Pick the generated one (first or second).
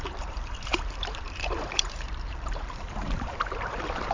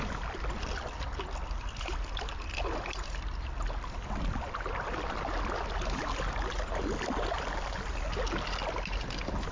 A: first